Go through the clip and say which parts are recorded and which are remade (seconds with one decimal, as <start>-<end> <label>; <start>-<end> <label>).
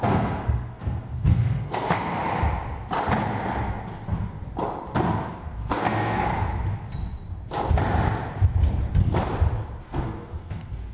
0.0-2.2 remade; 2.2-5.3 recorded; 5.3-6.3 remade; 6.3-9.8 recorded; 9.8-10.9 remade